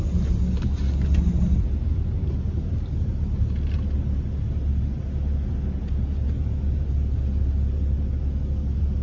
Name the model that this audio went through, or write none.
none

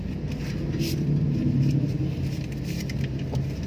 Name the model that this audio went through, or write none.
none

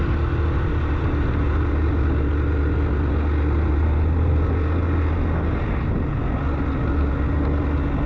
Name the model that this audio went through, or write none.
none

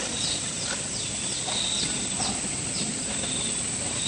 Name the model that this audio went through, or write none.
none